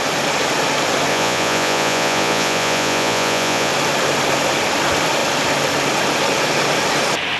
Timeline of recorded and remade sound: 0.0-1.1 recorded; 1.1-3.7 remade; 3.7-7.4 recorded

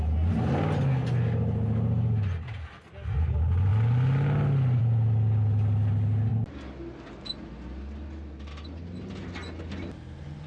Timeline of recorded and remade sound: 0.0-10.5 recorded

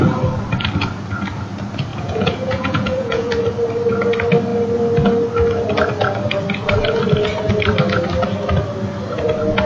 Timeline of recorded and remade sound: 0.0-1.9 recorded; 1.9-3.3 remade; 3.3-9.7 recorded